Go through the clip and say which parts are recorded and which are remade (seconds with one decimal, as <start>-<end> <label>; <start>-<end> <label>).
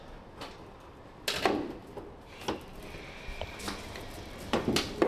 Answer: 0.0-5.1 recorded